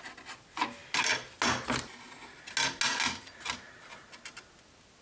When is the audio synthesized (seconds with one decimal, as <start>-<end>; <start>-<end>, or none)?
none